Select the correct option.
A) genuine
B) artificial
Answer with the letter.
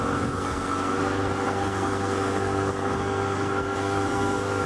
B